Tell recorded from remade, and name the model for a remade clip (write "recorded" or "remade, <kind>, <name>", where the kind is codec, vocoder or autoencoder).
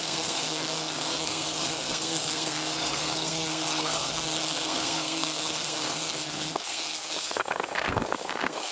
remade, codec, SNAC